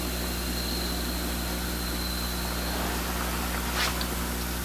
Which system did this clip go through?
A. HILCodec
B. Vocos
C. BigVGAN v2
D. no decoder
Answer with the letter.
D